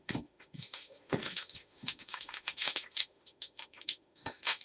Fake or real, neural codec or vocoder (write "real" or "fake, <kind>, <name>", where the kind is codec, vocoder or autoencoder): fake, autoencoder, DAC-VAE